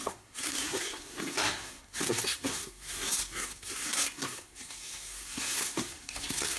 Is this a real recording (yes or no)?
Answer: no